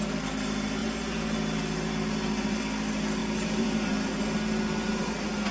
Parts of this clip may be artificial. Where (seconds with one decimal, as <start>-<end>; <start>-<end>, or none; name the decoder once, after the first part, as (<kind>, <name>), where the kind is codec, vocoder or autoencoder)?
none